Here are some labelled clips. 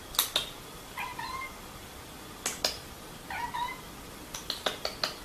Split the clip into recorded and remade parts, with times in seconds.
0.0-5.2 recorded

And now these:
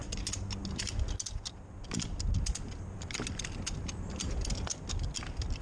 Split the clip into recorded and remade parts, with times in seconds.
0.0-5.6 recorded

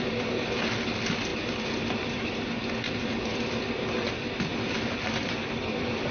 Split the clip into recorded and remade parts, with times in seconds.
0.0-6.1 recorded